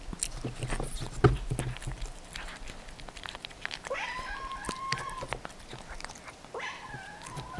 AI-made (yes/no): no